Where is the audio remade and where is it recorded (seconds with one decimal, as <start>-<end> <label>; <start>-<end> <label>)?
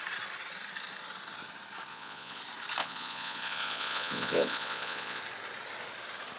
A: 0.0-1.9 recorded; 1.9-2.4 remade; 2.4-2.8 recorded; 2.8-5.2 remade; 5.2-6.4 recorded